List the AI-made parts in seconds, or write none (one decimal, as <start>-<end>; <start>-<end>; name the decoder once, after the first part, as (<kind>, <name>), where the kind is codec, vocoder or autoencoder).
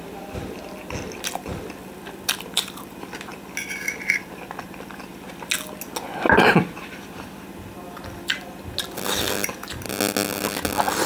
none